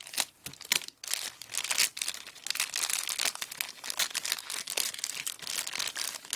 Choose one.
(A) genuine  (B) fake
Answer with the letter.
A